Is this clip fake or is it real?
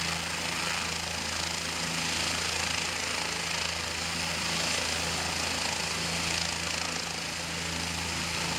real